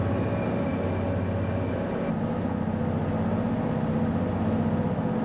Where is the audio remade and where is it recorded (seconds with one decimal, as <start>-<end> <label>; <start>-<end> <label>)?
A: 0.0-5.2 recorded